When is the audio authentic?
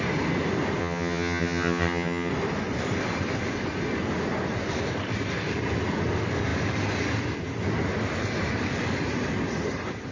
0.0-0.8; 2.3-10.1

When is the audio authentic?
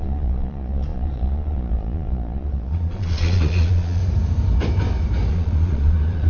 4.0-5.3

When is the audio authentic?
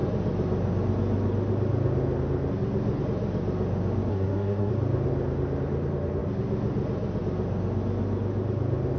0.0-4.1; 4.7-9.0